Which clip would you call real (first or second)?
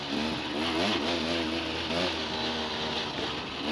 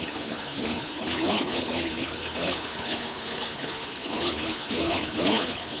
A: first